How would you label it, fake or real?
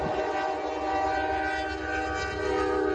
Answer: real